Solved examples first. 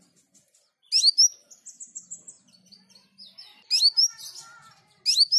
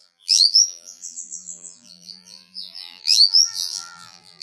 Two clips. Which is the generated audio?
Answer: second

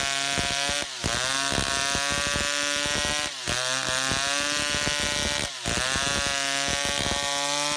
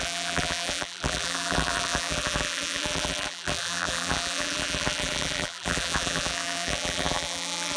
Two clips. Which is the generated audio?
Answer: second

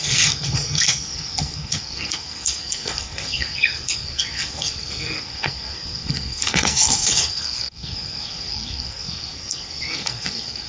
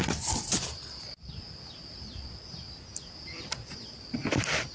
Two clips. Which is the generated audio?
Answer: first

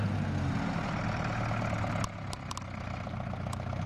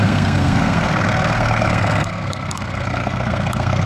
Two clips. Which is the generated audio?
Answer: second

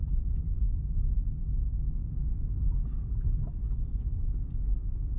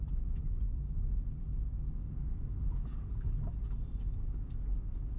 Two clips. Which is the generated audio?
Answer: first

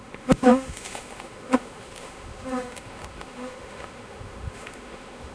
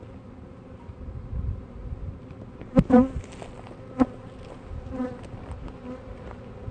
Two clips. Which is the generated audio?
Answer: first